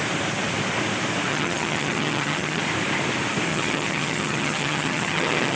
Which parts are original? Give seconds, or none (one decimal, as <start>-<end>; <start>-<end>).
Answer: 0.0-1.3; 2.6-3.5